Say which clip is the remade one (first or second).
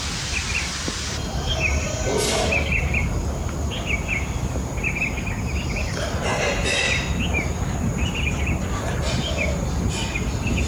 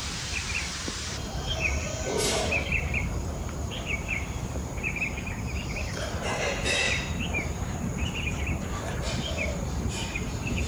second